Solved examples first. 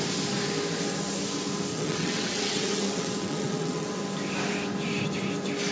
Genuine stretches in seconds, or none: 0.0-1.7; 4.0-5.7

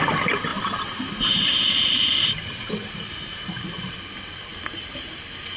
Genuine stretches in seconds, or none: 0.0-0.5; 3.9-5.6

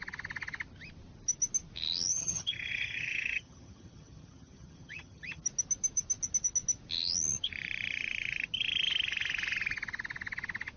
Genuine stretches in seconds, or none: 0.0-2.1; 5.4-10.8

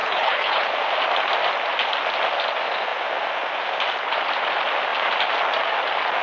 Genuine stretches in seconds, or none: 0.7-6.2

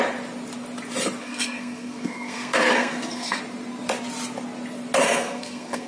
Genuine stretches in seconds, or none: 0.0-1.2; 3.4-5.0

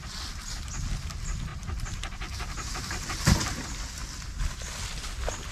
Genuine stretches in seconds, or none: 0.0-5.5

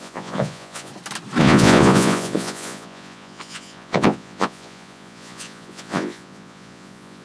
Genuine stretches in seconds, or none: 0.9-1.4